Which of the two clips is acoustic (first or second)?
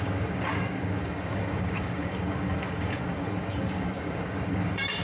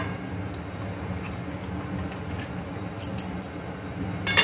second